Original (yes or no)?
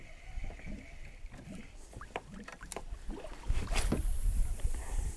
no